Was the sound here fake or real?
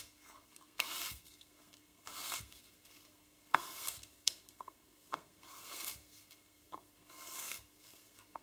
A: fake